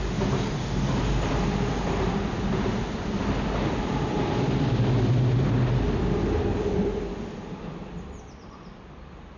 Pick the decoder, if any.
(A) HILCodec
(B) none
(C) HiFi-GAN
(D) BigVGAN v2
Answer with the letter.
B